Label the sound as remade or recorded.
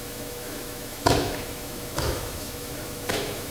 remade